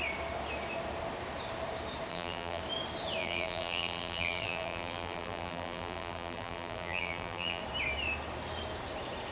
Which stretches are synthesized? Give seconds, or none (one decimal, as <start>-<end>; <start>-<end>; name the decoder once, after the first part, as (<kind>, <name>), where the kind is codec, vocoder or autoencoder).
2.1-2.6 (vocoder, BigVGAN v2); 3.2-7.6